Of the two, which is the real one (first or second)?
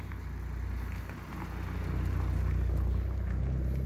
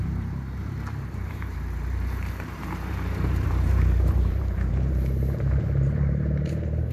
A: first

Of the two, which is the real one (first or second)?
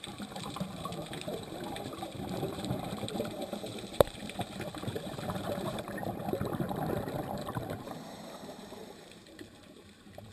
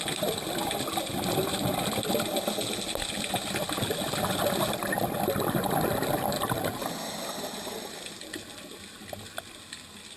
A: second